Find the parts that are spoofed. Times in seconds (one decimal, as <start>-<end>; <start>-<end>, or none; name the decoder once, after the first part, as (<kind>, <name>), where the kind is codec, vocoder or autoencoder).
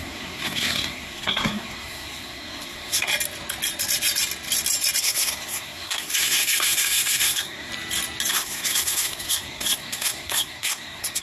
0.0-3.1 (codec, SNAC); 5.0-7.7; 8.3-11.2